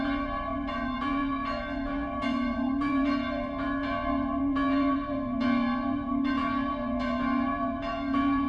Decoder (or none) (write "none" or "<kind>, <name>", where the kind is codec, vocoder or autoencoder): vocoder, Vocos